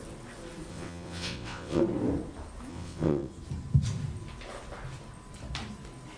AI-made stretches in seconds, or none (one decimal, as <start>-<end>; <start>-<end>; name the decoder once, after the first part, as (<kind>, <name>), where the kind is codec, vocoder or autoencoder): 0.7-1.8 (vocoder, WaveNeXt); 2.7-3.3

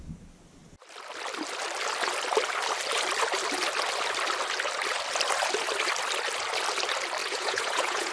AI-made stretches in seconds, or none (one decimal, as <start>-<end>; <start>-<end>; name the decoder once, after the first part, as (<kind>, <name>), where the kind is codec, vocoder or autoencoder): 7.2-8.1 (vocoder, Vocos)

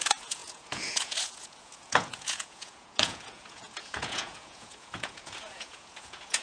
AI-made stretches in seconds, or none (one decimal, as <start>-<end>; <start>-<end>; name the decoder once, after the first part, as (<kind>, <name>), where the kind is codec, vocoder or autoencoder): 0.0-6.4 (vocoder, Vocos)

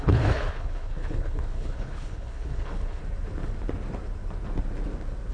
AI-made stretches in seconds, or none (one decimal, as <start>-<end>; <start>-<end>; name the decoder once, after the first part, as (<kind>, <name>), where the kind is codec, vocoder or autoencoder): 0.0-3.0 (codec, HILCodec)